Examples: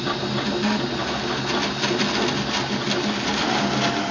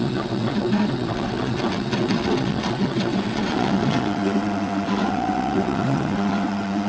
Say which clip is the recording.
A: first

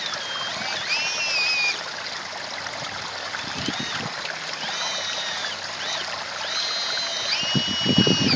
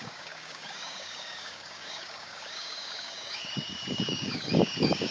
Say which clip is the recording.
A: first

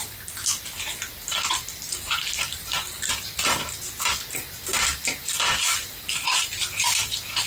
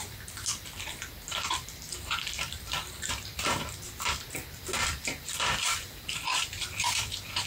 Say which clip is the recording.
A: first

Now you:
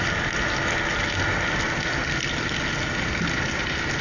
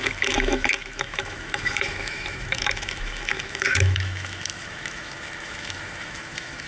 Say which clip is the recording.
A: first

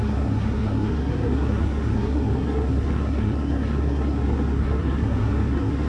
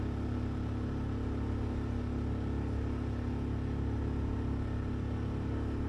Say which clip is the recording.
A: second